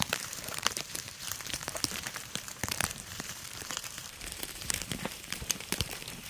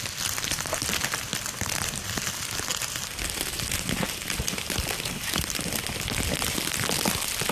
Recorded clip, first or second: second